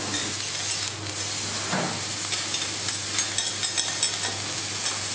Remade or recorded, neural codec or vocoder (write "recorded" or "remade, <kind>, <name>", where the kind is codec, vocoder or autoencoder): recorded